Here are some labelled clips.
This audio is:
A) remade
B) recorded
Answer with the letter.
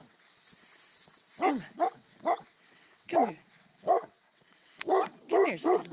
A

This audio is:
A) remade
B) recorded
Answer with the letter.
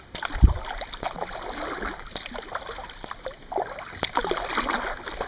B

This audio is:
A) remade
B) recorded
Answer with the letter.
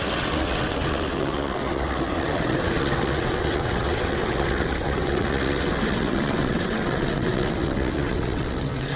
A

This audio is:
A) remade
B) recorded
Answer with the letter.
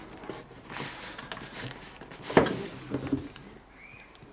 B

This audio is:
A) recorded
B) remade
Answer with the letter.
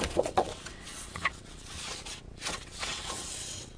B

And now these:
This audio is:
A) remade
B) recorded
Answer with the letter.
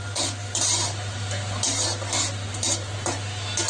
B